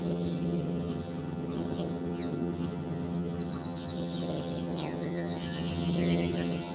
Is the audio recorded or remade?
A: remade